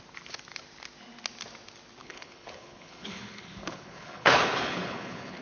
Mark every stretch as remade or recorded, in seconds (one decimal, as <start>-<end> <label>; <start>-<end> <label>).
0.0-2.0 recorded; 2.0-5.4 remade